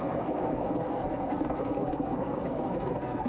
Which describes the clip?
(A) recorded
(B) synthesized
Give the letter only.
B